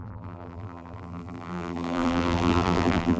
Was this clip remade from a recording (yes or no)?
yes